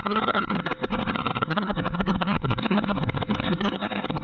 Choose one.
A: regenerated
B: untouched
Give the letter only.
A